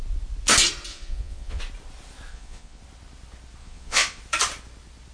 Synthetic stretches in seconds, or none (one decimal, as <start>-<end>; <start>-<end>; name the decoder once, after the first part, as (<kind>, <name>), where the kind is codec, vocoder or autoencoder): 0.9-1.6 (vocoder, Vocos); 2.3-2.8; 3.6-4.2